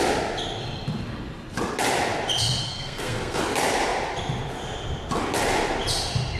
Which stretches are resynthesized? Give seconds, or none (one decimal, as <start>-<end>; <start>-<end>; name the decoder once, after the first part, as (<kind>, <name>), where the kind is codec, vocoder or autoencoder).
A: 2.6-3.4 (codec, SNAC)